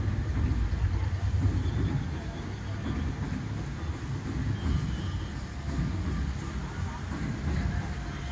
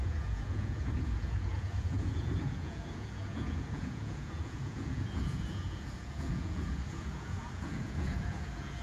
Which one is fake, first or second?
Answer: second